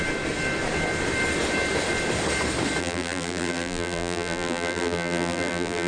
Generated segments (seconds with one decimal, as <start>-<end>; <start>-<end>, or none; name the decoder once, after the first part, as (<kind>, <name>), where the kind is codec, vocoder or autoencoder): 2.8-5.9 (vocoder, BigVGAN v2)